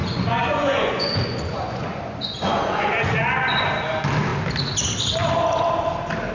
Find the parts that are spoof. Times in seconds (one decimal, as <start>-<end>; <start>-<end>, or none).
0.0-3.7